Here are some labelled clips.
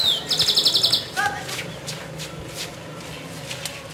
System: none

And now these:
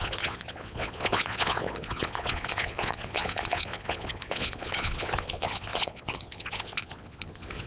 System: vocoder, Vocos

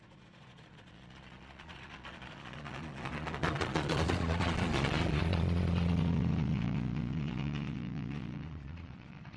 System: vocoder, Vocos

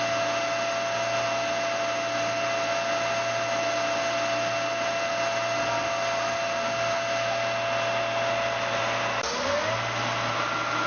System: none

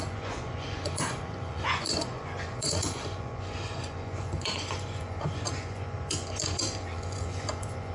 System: vocoder, Vocos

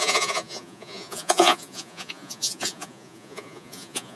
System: vocoder, Vocos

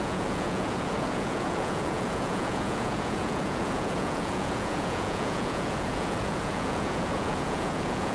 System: vocoder, Vocos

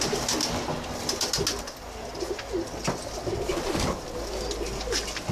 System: none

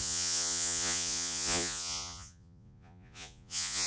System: vocoder, Vocos